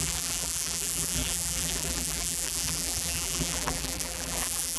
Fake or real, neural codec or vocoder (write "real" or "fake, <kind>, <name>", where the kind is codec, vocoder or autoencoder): fake, vocoder, BigVGAN v2